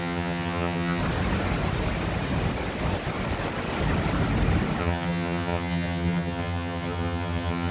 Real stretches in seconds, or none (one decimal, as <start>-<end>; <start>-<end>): 1.0-4.8